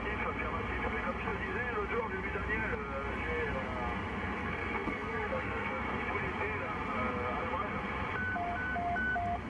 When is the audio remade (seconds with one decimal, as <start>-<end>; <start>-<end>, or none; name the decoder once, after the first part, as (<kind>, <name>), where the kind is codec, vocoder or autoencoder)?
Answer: 4.4-5.8 (codec, SNAC)